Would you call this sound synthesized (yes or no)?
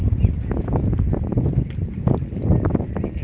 no